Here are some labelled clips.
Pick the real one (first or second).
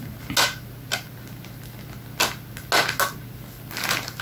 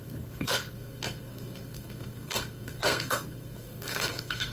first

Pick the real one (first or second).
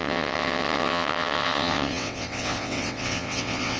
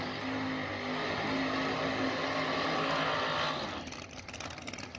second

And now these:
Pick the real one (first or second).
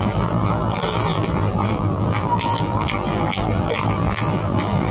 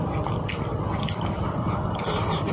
second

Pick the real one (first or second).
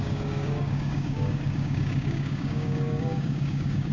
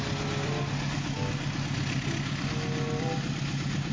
second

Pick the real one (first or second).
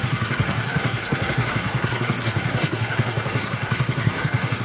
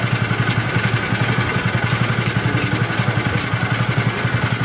second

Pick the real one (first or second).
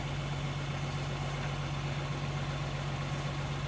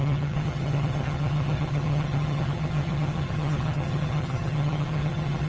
first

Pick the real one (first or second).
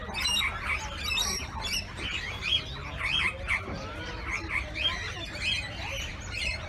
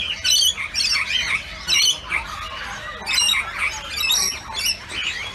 second